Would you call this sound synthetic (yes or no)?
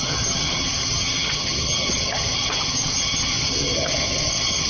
yes